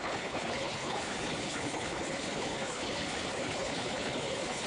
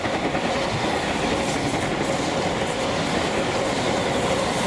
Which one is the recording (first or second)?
second